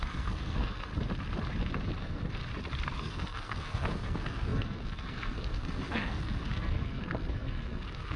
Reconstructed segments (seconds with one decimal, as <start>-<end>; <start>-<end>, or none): 0.0-0.9; 2.0-2.4; 3.0-8.2

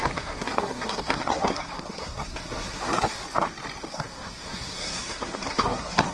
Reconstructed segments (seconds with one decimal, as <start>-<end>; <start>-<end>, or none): 0.0-3.2; 3.9-6.1